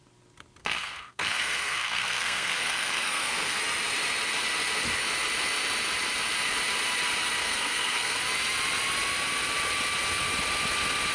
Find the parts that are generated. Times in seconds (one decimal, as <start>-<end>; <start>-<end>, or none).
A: 0.6-3.6; 7.4-8.2

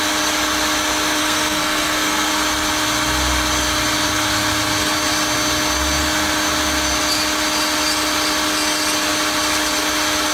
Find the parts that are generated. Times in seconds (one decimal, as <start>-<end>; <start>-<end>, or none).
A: 1.2-2.3

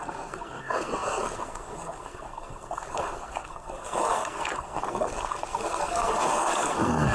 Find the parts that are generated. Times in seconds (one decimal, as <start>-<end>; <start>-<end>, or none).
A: 0.0-7.1

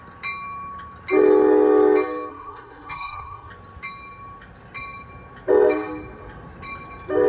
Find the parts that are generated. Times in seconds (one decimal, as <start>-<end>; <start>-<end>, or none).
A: 2.3-3.5

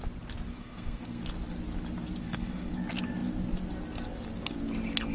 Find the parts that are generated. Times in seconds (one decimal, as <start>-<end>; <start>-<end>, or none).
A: 0.5-1.2; 2.2-2.7

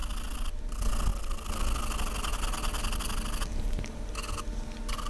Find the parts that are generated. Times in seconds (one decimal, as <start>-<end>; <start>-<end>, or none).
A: none